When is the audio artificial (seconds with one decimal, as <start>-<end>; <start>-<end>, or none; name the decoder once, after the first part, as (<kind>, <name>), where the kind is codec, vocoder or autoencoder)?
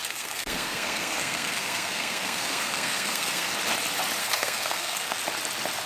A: 0.0-3.5 (codec, SNAC); 4.2-5.2